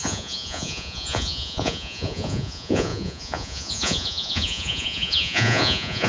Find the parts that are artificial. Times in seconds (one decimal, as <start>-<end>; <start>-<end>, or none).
0.0-6.1